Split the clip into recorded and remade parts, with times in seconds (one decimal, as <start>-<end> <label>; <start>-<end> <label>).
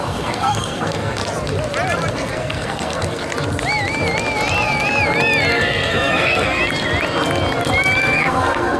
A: 0.0-1.2 remade; 1.2-2.1 recorded; 2.1-3.2 remade; 3.2-5.5 recorded; 5.5-6.6 remade; 6.6-8.0 recorded; 8.0-8.8 remade